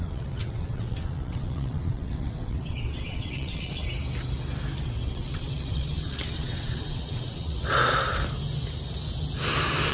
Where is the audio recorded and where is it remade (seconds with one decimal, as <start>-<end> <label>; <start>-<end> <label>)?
0.0-3.8 remade; 3.8-4.8 recorded; 4.8-7.8 remade; 7.8-9.9 recorded